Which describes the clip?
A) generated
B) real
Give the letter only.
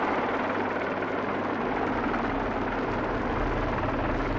B